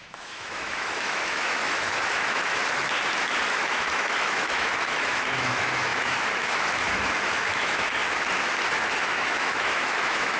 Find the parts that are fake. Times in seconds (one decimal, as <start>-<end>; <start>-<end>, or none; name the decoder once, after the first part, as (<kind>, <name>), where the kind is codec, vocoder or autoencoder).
0.0-2.6 (autoencoder, DAC-VAE); 3.5-8.0; 8.9-10.4